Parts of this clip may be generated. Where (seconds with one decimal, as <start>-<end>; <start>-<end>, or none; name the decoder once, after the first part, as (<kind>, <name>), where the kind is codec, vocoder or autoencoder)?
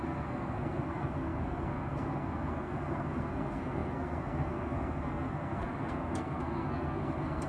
0.0-7.5 (codec, SNAC)